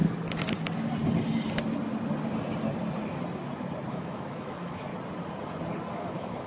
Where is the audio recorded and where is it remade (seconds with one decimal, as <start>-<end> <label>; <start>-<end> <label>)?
0.0-3.9 recorded; 3.9-4.9 remade; 4.9-5.9 recorded; 5.9-6.5 remade